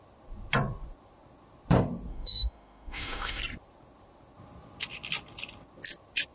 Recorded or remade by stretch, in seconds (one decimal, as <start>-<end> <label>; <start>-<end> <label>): 0.0-2.1 recorded; 2.1-3.4 remade; 3.4-6.3 recorded